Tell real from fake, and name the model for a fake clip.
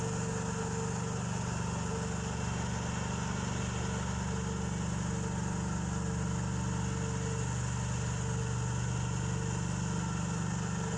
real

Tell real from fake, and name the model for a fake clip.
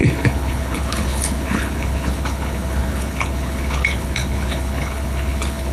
fake, codec, HILCodec